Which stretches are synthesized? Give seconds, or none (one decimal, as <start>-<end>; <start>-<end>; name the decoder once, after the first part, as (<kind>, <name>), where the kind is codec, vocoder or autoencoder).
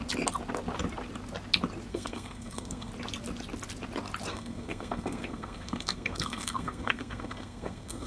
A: 1.9-2.9 (codec, SNAC); 4.3-8.1